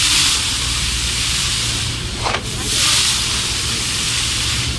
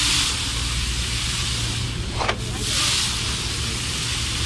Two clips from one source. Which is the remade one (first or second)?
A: first